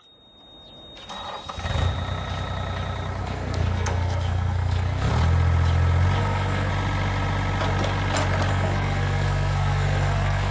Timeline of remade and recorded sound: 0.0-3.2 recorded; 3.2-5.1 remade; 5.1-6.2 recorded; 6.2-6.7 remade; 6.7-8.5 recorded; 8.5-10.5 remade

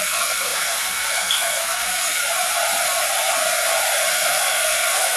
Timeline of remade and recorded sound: 0.0-2.2 remade; 2.2-4.1 recorded; 4.1-5.2 remade